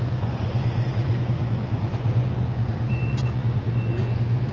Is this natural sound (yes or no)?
no